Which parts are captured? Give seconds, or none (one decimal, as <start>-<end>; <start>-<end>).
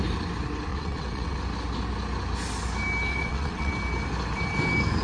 0.0-0.7; 1.4-3.1; 3.7-5.0